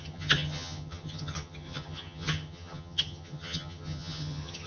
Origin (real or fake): fake